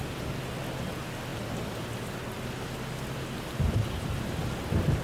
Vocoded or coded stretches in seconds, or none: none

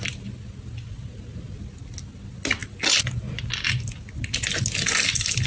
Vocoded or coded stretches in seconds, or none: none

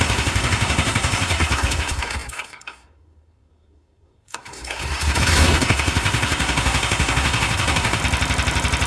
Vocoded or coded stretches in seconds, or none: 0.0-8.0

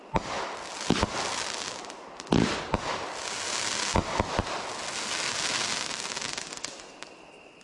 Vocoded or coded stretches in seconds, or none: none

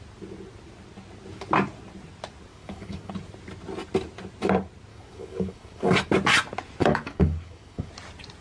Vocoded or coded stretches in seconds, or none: 2.5-3.1; 4.9-6.1; 6.8-7.9